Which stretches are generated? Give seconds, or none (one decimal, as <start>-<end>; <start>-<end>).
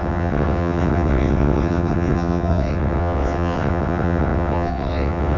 0.0-5.4